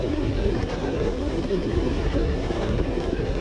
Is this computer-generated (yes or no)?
yes